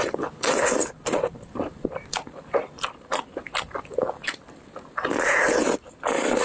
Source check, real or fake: real